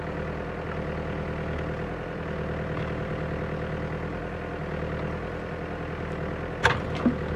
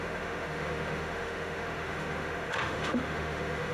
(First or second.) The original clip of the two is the first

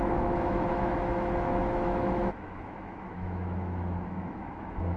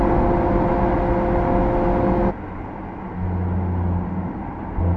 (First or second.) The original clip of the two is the second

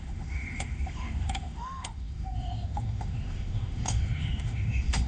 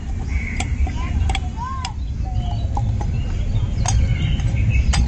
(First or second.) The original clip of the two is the second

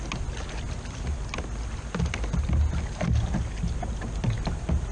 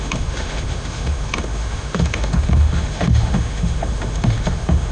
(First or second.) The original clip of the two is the first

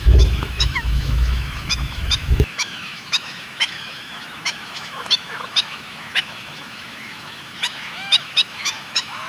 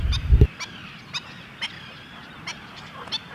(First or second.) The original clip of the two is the second